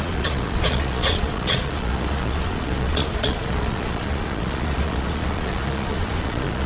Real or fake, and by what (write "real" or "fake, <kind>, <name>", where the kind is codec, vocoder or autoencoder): fake, vocoder, Vocos